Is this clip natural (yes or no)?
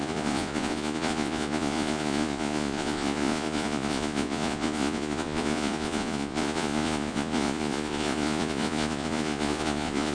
no